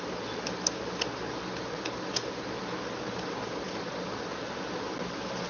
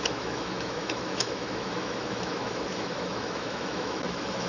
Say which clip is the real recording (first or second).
first